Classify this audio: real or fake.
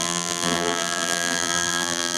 fake